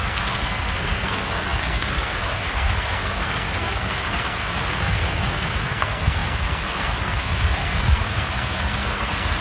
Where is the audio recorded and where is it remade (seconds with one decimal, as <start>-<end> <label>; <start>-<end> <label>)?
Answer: 0.0-9.4 remade